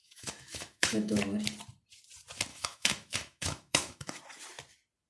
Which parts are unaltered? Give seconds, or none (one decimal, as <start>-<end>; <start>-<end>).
1.2-2.5; 4.2-5.1